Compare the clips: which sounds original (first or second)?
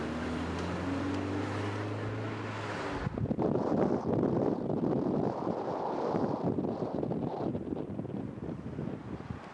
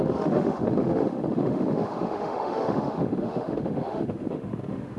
first